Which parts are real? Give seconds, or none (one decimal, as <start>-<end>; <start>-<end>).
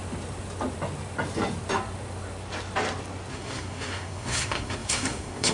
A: 0.0-3.3